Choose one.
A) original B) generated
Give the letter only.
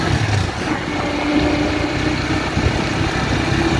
A